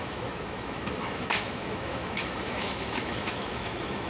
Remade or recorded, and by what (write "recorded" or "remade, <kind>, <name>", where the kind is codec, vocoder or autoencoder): remade, autoencoder, DAC-VAE